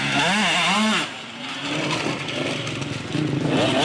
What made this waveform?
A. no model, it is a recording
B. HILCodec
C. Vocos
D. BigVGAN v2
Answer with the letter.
A